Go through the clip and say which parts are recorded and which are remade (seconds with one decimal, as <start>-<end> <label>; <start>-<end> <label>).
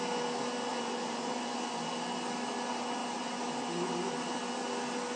0.0-0.7 recorded; 0.7-1.9 remade; 1.9-5.2 recorded